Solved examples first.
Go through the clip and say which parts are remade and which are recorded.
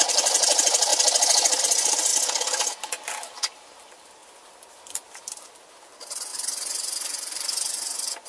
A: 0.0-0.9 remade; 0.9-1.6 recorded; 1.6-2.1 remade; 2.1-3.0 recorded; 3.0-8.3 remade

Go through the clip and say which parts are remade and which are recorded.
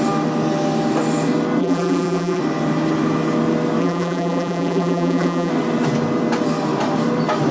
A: 0.0-1.6 recorded; 1.6-2.4 remade; 2.4-3.8 recorded; 3.8-5.5 remade; 5.5-7.5 recorded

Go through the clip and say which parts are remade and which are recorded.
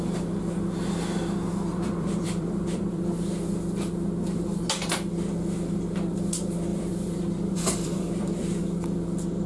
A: 0.0-1.7 recorded; 1.7-3.0 remade; 3.0-6.7 recorded; 6.7-8.6 remade; 8.6-9.5 recorded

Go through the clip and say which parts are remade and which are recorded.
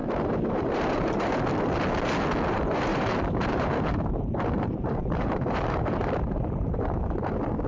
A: 0.0-1.3 remade; 1.3-2.9 recorded; 2.9-7.0 remade; 7.0-7.7 recorded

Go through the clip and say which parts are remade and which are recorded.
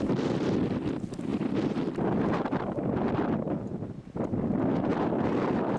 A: 0.0-5.8 recorded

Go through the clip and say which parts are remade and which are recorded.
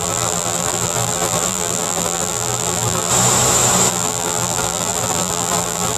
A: 0.0-3.1 remade; 3.1-3.9 recorded; 3.9-6.0 remade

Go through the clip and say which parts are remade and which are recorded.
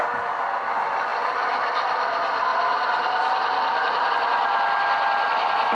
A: 0.0-1.1 recorded; 1.1-1.7 remade; 1.7-2.5 recorded; 2.5-4.1 remade; 4.1-5.7 recorded